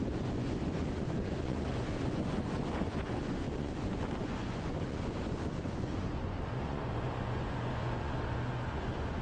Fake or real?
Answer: fake